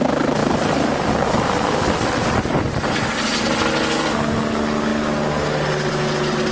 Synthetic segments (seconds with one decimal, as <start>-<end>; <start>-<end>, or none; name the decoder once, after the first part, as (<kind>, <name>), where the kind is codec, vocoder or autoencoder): none